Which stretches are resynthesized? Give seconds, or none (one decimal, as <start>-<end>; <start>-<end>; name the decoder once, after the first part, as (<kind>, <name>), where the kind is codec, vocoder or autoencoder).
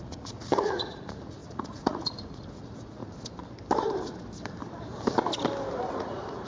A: 0.0-3.0 (vocoder, Vocos); 5.9-6.5